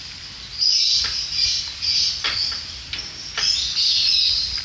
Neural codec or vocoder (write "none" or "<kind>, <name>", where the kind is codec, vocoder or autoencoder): none